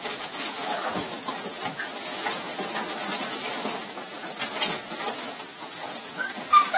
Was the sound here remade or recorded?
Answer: remade